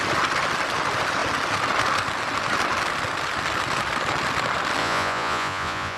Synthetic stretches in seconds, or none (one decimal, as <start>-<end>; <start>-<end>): 4.8-6.0